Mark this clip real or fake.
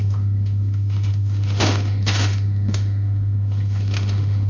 fake